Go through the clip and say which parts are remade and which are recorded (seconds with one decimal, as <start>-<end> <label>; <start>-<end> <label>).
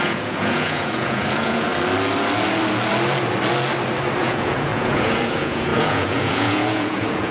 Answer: 0.0-1.7 remade; 1.7-4.2 recorded; 4.2-7.3 remade